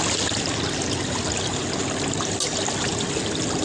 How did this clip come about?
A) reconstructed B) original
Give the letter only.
B